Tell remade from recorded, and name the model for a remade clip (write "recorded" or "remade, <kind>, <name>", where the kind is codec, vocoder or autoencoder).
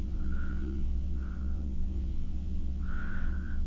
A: remade, vocoder, WaveNeXt